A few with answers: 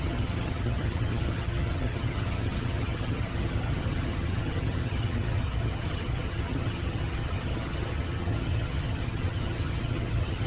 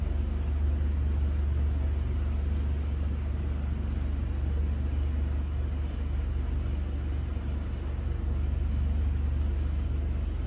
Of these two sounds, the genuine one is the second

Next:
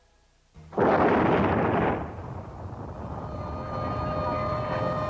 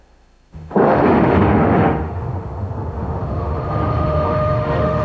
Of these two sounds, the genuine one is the first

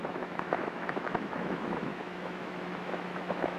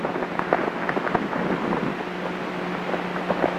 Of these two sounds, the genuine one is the second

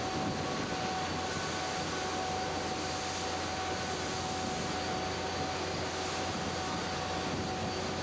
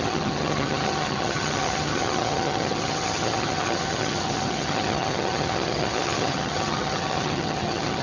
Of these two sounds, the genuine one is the first